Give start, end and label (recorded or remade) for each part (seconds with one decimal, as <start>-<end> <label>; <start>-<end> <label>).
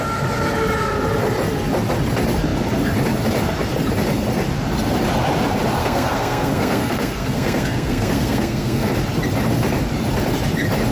0.0-5.8 recorded; 5.8-8.9 remade; 8.9-10.9 recorded